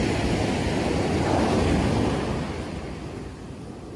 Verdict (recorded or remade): recorded